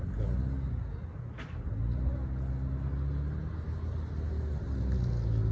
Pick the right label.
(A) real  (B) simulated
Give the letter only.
A